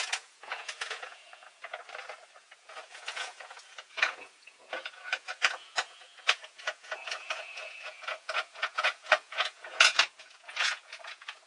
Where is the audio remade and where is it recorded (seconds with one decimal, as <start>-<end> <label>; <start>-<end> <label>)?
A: 0.0-1.8 remade; 1.8-2.4 recorded; 2.4-11.5 remade